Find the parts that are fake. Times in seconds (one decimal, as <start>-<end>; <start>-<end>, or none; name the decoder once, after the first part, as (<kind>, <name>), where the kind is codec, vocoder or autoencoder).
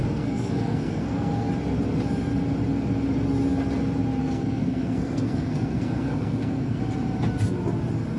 0.0-1.5 (codec, SNAC); 4.2-6.8